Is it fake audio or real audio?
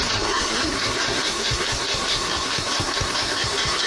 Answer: fake